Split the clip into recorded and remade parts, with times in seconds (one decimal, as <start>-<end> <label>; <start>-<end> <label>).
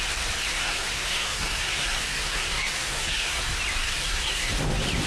0.0-0.5 recorded; 0.5-3.4 remade; 3.4-3.8 recorded; 3.8-4.5 remade; 4.5-5.1 recorded